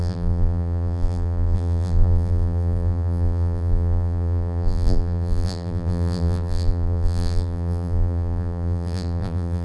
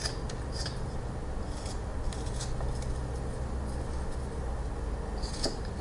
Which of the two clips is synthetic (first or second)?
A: first